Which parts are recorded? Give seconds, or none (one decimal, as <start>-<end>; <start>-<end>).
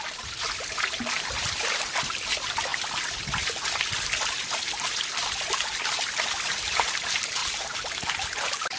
0.0-7.4